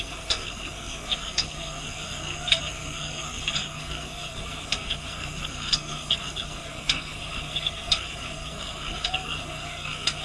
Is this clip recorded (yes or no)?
no